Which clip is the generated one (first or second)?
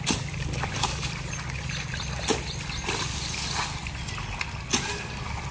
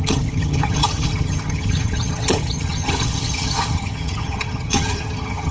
second